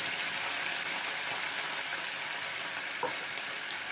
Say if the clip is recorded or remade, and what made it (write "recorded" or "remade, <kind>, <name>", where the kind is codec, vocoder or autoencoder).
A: recorded